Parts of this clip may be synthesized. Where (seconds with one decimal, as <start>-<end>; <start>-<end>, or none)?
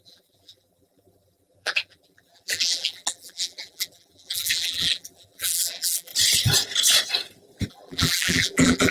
0.0-6.1; 7.7-8.9